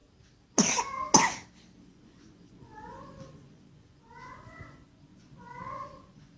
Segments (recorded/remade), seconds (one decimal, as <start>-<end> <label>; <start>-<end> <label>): 0.0-1.9 recorded; 1.9-6.4 remade